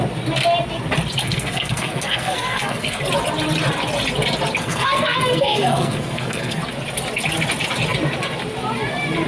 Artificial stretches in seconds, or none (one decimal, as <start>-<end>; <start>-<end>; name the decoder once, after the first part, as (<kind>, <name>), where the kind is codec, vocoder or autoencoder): 1.2-3.0 (codec, SNAC); 4.6-6.6

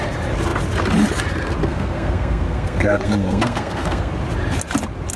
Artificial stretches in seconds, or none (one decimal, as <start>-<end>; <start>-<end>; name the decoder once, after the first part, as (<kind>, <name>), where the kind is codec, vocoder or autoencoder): 1.6-4.1 (codec, SNAC)

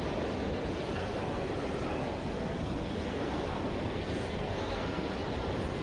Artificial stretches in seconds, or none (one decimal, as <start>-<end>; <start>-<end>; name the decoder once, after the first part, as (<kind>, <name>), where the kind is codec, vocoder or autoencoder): 0.9-1.5 (codec, SNAC); 1.9-5.1

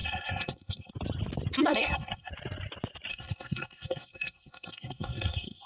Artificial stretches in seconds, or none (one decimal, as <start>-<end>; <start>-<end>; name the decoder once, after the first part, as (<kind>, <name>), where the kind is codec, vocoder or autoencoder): 0.0-0.9 (codec, SNAC); 1.7-2.3; 3.1-5.7

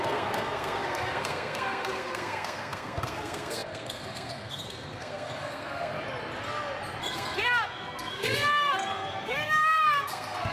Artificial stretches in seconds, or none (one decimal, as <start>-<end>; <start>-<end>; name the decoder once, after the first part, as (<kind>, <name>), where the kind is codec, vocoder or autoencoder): 0.0-5.9 (codec, SNAC); 7.0-10.5